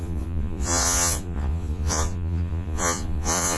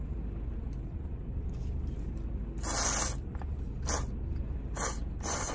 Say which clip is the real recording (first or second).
second